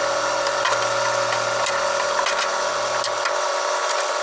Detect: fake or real real